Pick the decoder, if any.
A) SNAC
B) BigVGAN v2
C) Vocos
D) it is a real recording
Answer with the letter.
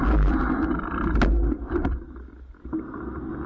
D